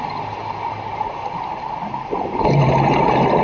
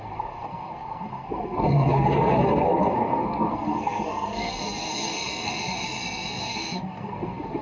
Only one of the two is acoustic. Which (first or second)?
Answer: first